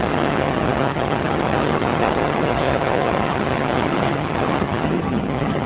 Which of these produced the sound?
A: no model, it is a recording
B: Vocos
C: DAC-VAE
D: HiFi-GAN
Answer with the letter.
D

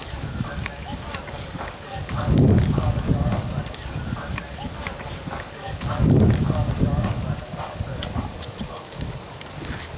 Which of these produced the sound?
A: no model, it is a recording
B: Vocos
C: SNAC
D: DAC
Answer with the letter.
D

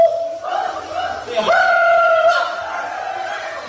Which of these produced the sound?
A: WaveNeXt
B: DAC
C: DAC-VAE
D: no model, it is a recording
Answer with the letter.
D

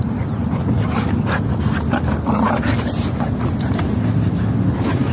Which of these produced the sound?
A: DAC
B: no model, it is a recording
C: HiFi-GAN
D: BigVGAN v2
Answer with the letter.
B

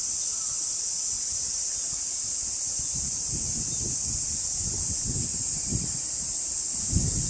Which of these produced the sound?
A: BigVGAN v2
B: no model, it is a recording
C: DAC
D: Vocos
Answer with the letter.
B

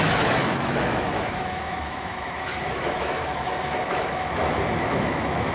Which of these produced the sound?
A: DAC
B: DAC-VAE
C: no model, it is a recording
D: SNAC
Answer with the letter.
B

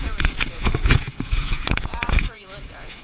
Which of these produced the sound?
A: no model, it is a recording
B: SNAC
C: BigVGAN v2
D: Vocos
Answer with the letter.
D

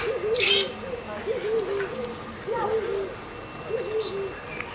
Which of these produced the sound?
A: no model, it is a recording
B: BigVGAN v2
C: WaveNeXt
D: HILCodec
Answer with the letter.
A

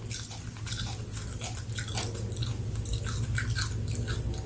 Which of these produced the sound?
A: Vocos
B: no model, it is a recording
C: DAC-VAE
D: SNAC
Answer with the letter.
B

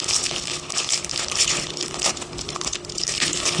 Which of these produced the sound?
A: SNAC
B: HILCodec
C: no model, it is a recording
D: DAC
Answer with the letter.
B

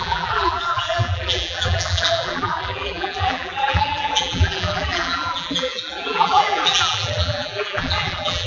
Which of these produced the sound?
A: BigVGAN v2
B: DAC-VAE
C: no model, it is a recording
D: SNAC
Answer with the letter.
A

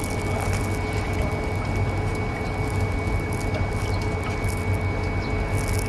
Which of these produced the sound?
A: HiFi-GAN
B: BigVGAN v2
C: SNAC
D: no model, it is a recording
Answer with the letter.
D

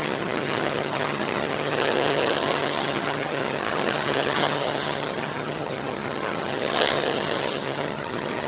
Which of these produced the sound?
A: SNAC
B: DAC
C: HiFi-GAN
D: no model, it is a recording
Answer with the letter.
C